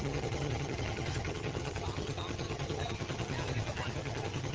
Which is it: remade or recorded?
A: remade